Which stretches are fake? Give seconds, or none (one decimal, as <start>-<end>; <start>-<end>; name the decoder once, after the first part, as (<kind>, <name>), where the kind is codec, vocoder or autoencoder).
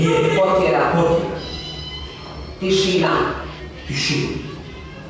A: 2.9-3.6 (codec, SNAC)